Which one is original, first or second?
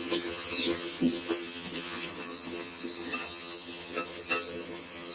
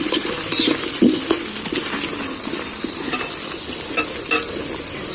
second